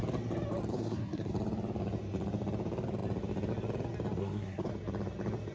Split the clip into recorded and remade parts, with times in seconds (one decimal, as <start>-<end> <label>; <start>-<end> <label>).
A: 0.0-0.7 recorded; 0.7-1.3 remade; 1.3-4.2 recorded; 4.2-4.7 remade; 4.7-5.5 recorded

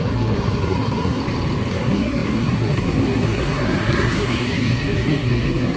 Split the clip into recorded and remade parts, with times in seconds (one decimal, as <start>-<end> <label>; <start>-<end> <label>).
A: 0.0-1.2 remade; 1.2-1.7 recorded; 1.7-5.8 remade

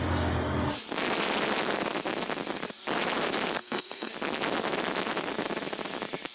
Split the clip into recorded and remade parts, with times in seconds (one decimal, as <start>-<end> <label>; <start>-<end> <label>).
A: 0.0-3.6 recorded; 3.6-4.1 remade; 4.1-6.3 recorded

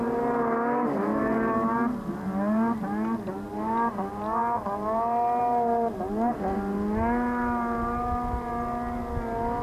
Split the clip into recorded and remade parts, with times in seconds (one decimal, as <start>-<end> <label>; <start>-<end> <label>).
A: 0.0-9.6 recorded

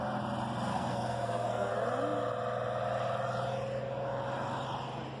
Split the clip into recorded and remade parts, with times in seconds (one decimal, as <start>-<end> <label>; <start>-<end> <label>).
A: 0.0-0.7 recorded; 0.7-1.7 remade; 1.7-5.2 recorded

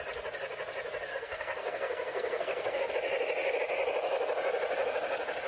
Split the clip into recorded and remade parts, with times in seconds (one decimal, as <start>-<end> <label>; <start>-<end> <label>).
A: 0.0-1.1 recorded; 1.1-2.9 remade; 2.9-5.5 recorded

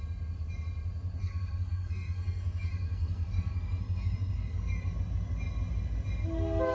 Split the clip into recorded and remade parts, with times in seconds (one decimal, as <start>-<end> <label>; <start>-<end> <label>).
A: 0.0-1.2 recorded; 1.2-4.9 remade; 4.9-6.7 recorded